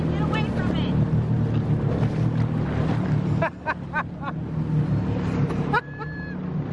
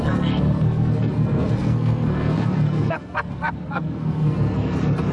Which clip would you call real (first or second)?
first